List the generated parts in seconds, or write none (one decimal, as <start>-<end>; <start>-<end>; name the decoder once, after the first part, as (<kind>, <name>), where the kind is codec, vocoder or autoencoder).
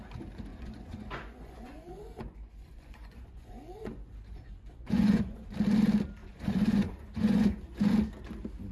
0.5-5.5 (vocoder, Vocos); 6.2-7.9